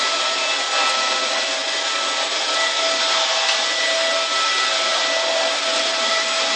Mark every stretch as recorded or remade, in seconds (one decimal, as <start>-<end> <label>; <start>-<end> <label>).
0.0-6.6 recorded